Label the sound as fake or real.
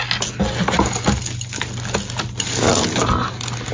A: real